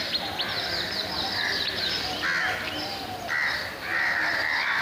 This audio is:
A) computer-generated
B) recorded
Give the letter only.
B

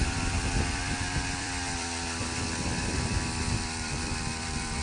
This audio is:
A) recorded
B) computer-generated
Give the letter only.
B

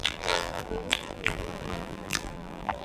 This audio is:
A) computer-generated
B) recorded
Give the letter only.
A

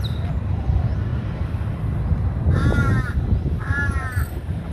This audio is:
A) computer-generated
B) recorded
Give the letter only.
B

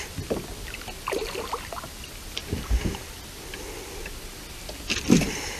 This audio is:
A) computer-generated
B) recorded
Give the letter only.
B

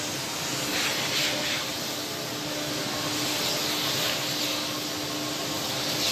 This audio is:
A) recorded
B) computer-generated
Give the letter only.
A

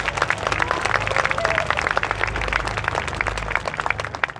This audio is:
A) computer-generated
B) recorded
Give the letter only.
B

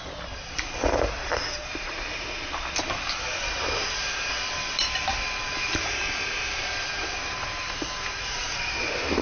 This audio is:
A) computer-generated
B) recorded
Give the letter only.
A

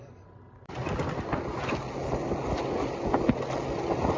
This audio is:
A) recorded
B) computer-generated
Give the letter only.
A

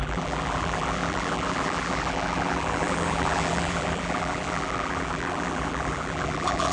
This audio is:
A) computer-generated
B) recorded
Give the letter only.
A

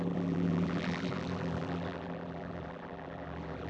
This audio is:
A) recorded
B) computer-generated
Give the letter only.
B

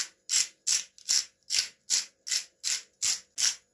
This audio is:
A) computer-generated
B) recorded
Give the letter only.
B